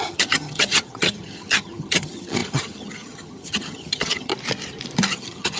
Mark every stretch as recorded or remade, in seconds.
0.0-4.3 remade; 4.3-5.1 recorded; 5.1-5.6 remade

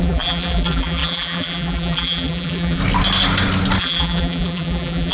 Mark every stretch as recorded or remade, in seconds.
0.0-2.8 remade; 2.8-3.8 recorded; 3.8-5.1 remade

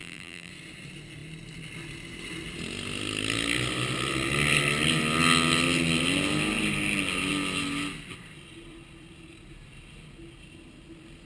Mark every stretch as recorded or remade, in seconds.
0.0-0.5 remade; 0.5-11.3 recorded

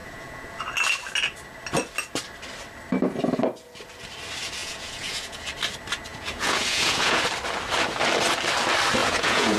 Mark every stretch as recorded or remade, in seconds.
0.0-0.6 remade; 0.6-4.6 recorded; 4.6-5.4 remade; 5.4-6.1 recorded; 6.1-7.2 remade; 7.2-9.0 recorded; 9.0-9.6 remade

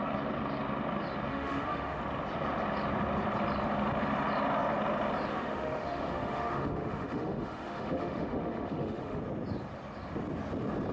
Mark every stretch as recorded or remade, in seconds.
0.0-1.3 recorded; 1.3-2.0 remade; 2.0-5.3 recorded; 5.3-9.2 remade; 9.2-10.9 recorded